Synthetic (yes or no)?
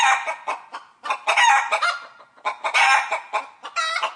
no